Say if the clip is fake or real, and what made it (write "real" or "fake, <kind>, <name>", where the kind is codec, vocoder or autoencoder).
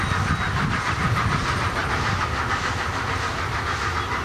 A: real